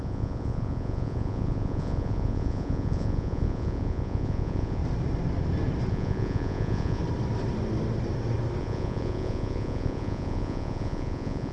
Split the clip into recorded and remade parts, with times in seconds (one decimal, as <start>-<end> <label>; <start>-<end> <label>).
0.0-4.8 remade; 4.8-5.9 recorded; 5.9-7.0 remade; 7.0-8.6 recorded; 8.6-11.5 remade